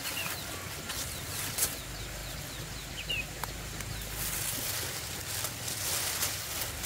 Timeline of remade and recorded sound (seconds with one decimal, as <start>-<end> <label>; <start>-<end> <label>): 0.0-6.9 recorded

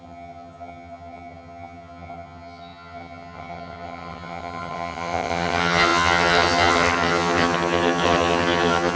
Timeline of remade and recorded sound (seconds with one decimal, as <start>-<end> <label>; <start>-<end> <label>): 0.0-9.0 remade